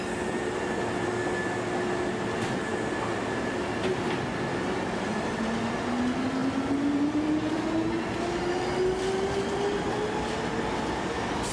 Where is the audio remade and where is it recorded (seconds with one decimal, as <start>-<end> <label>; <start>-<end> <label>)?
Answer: 0.0-11.5 recorded